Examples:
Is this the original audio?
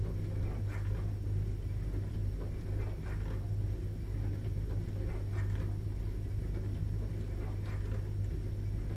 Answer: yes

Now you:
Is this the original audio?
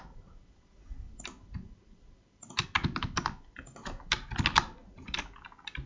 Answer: yes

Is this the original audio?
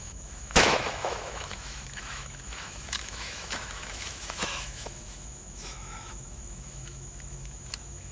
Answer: no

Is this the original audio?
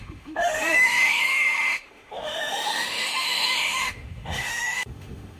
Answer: no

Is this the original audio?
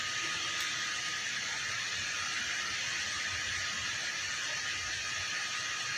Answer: yes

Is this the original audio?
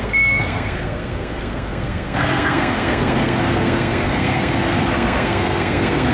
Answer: no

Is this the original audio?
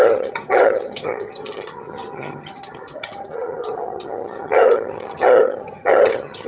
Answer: no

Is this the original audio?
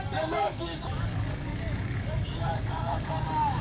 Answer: no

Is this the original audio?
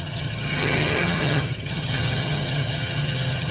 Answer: no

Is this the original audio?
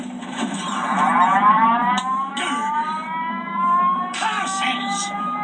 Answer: no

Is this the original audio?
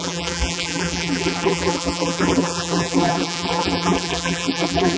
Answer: no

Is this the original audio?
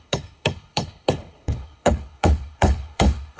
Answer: no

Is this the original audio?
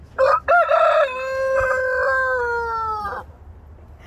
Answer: yes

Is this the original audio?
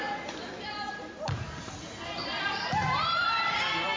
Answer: no